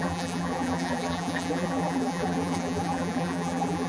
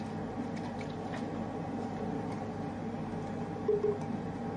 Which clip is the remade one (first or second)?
first